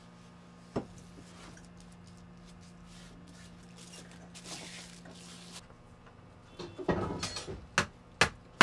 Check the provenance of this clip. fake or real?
real